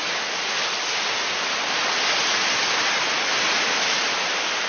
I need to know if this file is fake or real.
real